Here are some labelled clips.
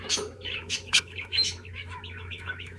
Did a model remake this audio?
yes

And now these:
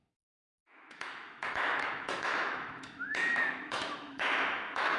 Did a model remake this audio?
yes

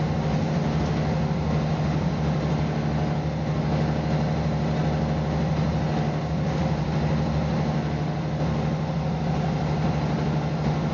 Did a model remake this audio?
no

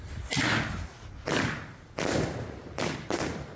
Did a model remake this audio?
no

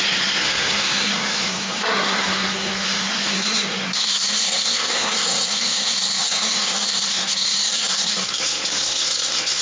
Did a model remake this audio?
yes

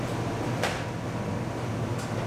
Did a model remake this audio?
no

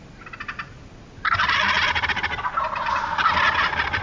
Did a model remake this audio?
no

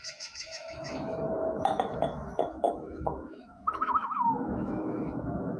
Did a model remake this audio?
yes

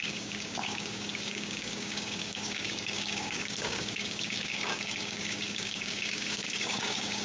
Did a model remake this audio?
yes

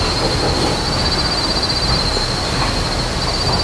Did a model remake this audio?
no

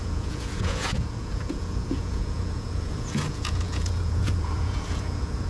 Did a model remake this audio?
yes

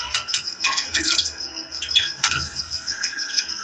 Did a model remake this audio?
yes